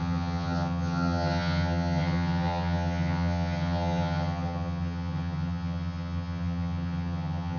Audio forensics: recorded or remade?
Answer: remade